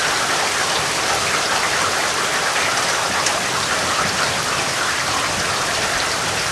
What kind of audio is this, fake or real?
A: real